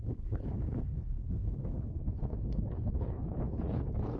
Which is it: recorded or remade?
remade